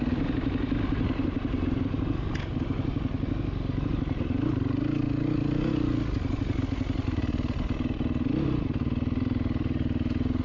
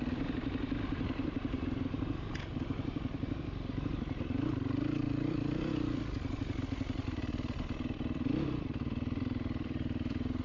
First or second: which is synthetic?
second